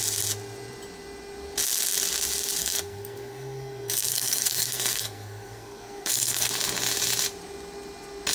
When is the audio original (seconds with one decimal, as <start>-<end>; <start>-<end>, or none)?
0.0-2.6; 6.5-8.3